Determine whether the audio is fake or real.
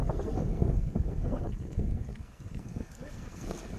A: fake